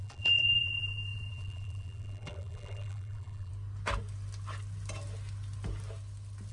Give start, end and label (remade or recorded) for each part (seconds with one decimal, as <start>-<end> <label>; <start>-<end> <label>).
0.0-3.5 remade; 3.5-6.5 recorded